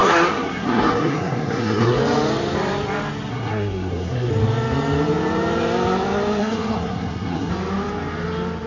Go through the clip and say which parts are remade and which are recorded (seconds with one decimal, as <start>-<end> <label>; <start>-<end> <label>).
0.0-2.0 remade; 2.0-3.3 recorded; 3.3-4.3 remade; 4.3-6.4 recorded; 6.4-7.5 remade; 7.5-8.7 recorded

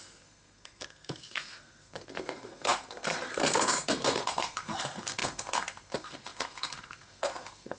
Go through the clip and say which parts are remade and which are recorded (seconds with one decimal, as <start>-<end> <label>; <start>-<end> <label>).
0.0-7.8 remade

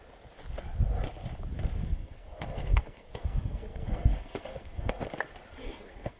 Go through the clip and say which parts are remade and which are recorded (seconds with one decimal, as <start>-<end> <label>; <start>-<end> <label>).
0.0-1.8 recorded; 1.8-5.0 remade; 5.0-5.6 recorded; 5.6-6.2 remade

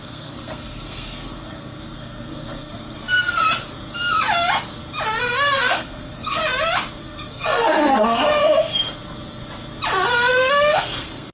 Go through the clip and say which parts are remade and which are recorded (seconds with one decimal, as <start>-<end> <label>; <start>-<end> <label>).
0.0-3.4 remade; 3.4-5.2 recorded; 5.2-6.4 remade; 6.4-7.0 recorded; 7.0-8.4 remade; 8.4-10.3 recorded; 10.3-11.3 remade

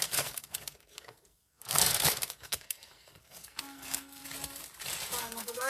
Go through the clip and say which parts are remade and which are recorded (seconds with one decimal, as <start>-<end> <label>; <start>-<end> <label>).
0.0-4.2 remade; 4.2-5.2 recorded; 5.2-5.7 remade

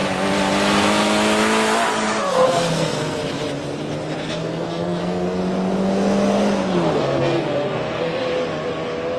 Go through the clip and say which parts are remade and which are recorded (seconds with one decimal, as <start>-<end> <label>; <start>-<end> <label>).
0.0-2.3 recorded; 2.3-3.2 remade; 3.2-4.2 recorded; 4.2-5.4 remade; 5.4-7.0 recorded; 7.0-8.2 remade; 8.2-9.2 recorded

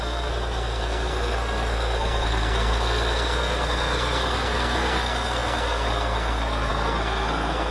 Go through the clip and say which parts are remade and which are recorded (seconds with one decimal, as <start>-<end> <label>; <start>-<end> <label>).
0.0-7.7 remade

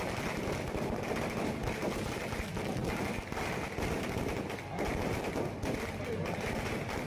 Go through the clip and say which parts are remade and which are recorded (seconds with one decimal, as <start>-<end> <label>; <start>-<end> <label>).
0.0-7.1 recorded